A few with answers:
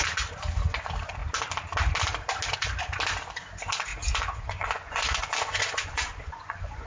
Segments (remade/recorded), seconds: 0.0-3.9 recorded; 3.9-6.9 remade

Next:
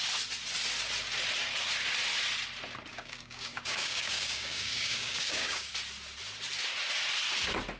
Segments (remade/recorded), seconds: 0.0-2.9 recorded; 2.9-5.7 remade; 5.7-7.8 recorded

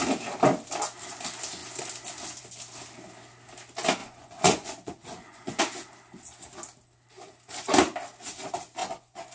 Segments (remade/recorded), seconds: 0.0-4.0 recorded; 4.0-5.6 remade; 5.6-8.8 recorded; 8.8-9.3 remade

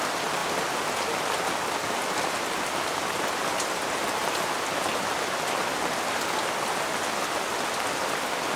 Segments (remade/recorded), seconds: 0.0-8.6 recorded

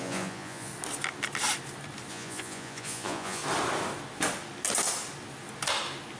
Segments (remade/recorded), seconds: 0.0-0.7 remade; 0.7-2.1 recorded; 2.1-3.4 remade; 3.4-6.2 recorded

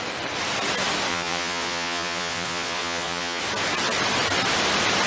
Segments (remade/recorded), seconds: 0.0-1.1 recorded; 1.1-3.4 remade; 3.4-5.1 recorded

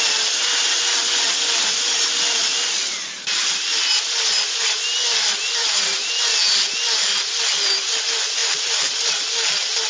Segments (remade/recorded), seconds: 0.0-5.6 recorded; 5.6-6.2 remade; 6.2-8.4 recorded; 8.4-9.1 remade; 9.1-9.9 recorded